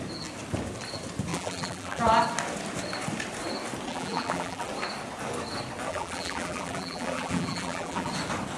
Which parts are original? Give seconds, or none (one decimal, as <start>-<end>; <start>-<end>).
0.0-1.3; 2.0-3.9; 4.7-5.9; 8.1-8.6

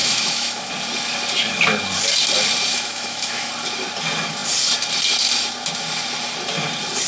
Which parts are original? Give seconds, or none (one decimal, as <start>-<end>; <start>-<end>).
0.7-2.7; 3.5-7.1

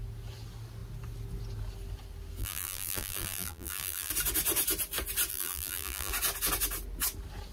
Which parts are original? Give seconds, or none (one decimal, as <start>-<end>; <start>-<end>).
0.0-2.4; 4.1-5.3; 6.1-7.5

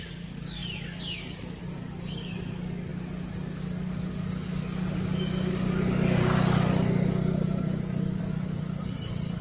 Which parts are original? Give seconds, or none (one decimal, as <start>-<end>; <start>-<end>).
none

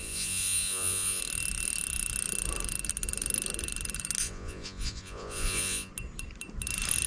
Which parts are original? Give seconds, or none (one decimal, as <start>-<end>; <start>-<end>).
1.2-4.2; 5.9-7.1

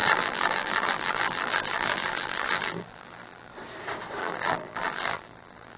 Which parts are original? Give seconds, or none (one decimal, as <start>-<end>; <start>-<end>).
3.5-4.2